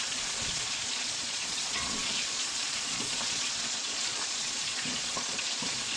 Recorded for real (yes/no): no